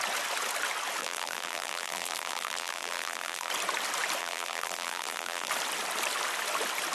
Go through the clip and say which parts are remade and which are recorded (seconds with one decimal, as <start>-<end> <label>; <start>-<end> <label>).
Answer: 0.0-1.0 recorded; 1.0-3.5 remade; 3.5-4.2 recorded; 4.2-5.5 remade; 5.5-6.9 recorded